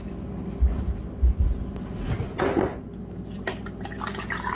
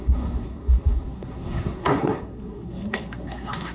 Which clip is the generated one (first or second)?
second